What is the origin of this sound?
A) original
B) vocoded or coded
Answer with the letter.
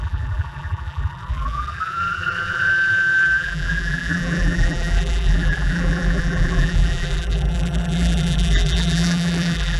B